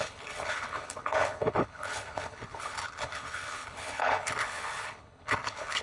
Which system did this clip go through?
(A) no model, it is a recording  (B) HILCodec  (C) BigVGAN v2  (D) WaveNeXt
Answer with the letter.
B